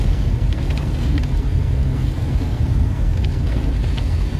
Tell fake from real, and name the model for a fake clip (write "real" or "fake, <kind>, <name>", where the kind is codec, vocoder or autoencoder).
fake, codec, SNAC